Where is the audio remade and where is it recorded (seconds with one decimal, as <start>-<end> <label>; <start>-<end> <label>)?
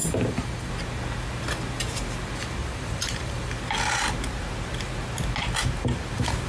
0.0-0.7 remade; 0.7-2.6 recorded; 2.6-3.5 remade; 3.5-6.5 recorded